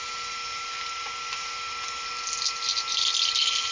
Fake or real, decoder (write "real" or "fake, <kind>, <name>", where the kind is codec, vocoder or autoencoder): real